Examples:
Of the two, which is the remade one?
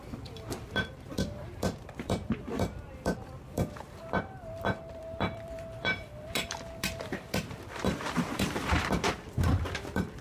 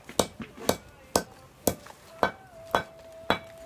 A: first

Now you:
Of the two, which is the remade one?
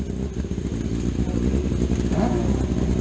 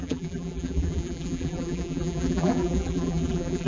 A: second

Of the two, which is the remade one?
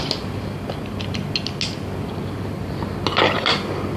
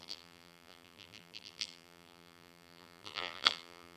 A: second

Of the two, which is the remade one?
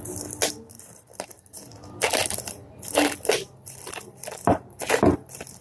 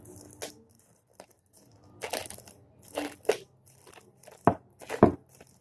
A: first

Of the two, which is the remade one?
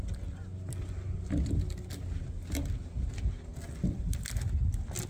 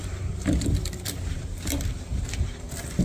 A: second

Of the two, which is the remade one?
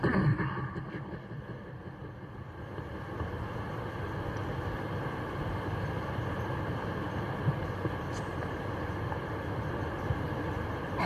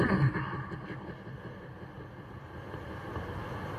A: first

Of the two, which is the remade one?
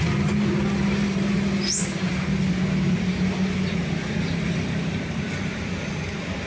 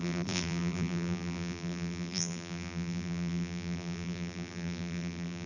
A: second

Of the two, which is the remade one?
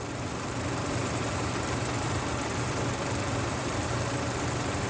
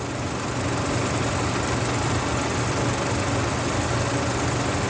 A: first